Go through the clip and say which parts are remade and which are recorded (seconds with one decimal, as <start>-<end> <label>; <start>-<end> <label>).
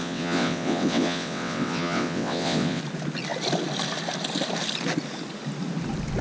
0.0-2.8 remade; 2.8-6.2 recorded